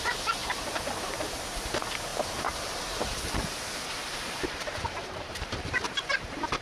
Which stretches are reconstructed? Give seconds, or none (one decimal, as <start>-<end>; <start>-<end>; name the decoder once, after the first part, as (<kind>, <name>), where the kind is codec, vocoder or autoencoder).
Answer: 0.0-6.6 (vocoder, BigVGAN v2)